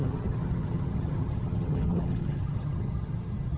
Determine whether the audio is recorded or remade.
remade